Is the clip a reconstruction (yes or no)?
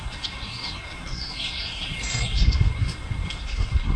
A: yes